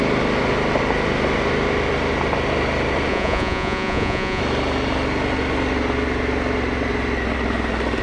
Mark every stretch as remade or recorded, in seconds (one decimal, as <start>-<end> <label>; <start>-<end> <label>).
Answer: 0.0-3.1 recorded; 3.1-4.4 remade; 4.4-8.0 recorded